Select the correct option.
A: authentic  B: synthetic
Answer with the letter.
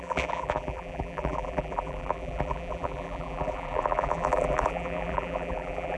B